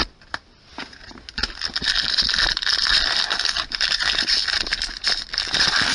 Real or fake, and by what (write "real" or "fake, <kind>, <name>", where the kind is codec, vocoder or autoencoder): real